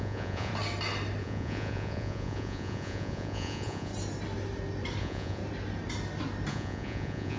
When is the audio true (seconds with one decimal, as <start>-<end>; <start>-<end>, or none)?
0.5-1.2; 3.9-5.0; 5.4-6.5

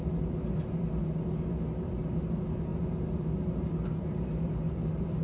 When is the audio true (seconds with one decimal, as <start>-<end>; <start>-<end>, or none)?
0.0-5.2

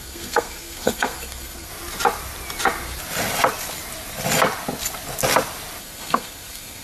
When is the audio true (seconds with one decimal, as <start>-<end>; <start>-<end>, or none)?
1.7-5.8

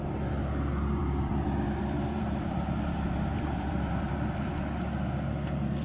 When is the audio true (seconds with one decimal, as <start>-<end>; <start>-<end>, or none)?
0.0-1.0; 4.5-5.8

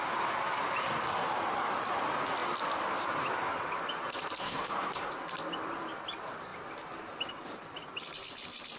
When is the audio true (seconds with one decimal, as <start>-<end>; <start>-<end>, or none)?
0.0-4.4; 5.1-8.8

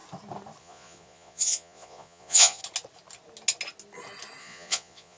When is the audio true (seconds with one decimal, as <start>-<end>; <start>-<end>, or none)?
0.0-0.6; 2.6-4.4